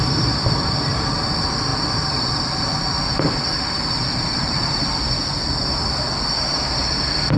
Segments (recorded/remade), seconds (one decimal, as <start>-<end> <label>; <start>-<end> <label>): 0.0-7.4 recorded